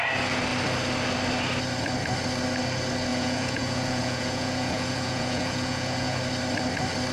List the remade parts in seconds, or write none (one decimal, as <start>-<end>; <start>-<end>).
3.1-6.2

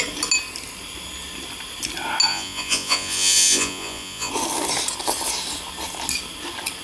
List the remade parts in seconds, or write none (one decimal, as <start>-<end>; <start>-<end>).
2.3-4.3

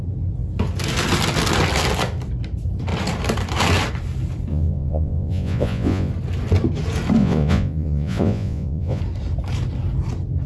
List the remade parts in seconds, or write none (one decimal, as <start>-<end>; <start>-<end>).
4.5-6.1; 7.2-9.0